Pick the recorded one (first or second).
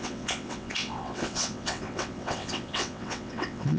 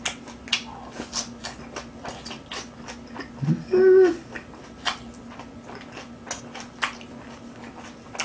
second